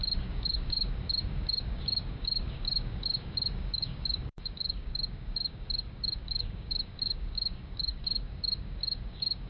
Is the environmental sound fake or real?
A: fake